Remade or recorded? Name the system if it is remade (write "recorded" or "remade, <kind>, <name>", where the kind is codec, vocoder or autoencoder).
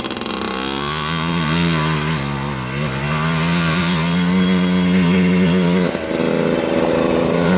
recorded